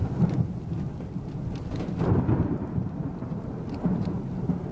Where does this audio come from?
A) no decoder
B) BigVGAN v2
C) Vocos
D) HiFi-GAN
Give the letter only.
A